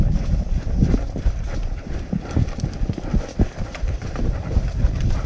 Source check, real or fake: real